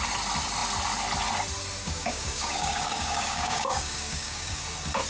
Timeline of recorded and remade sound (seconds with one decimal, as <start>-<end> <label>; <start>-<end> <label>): 0.0-1.8 recorded; 1.8-4.6 remade; 4.6-5.1 recorded